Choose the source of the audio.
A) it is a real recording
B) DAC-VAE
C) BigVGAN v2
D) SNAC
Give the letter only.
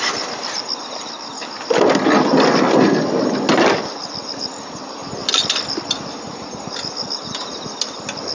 A